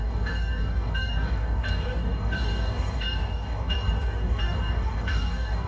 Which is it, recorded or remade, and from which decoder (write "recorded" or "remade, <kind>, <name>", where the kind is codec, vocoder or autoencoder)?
remade, codec, DAC